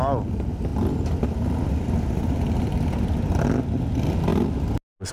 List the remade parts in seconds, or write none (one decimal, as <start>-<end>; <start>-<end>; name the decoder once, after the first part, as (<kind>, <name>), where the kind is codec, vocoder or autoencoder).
none